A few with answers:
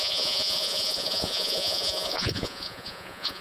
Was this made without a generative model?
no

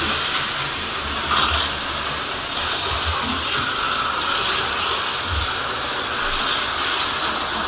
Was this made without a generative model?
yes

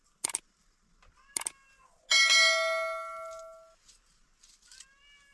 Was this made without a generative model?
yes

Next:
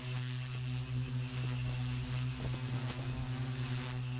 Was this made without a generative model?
yes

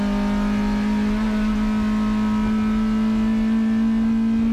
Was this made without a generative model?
yes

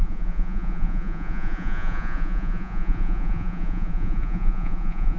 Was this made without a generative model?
no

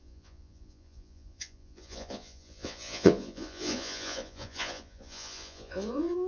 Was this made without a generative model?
no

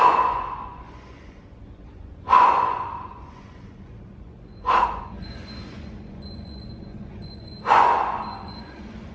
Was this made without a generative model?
no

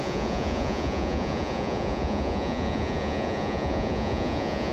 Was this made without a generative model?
no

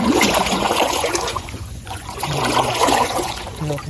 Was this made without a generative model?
no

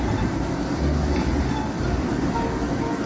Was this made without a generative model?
yes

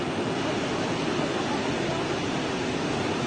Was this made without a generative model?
yes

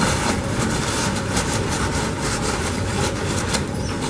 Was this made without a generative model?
yes